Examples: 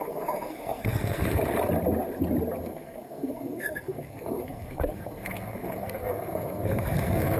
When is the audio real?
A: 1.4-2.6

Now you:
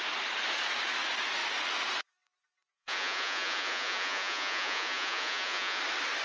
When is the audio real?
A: 0.0-2.7; 5.8-6.2

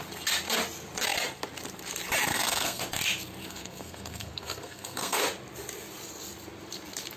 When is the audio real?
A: 0.0-2.3; 2.8-3.4; 5.2-7.2

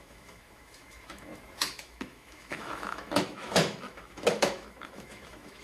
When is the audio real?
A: none